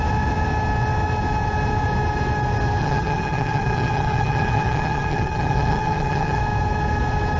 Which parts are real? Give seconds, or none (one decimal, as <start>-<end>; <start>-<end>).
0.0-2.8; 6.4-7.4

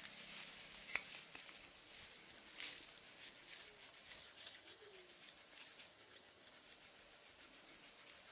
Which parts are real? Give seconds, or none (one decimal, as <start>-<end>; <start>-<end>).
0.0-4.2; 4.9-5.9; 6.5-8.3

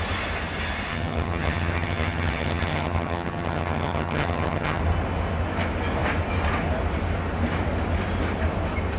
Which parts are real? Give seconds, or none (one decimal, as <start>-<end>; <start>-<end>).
0.0-0.9; 4.8-9.0

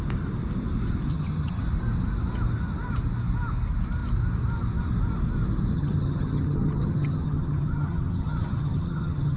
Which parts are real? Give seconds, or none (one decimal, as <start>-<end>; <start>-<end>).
0.0-1.1; 1.6-5.7